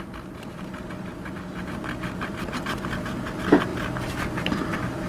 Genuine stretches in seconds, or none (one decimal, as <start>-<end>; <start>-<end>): none